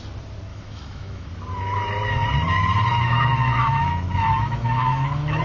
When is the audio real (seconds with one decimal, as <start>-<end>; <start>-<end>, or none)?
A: 0.0-0.5; 1.3-2.9